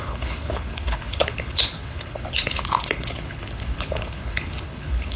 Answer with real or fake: fake